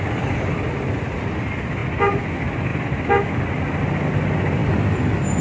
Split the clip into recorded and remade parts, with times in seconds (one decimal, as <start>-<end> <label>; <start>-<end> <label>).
0.0-5.4 recorded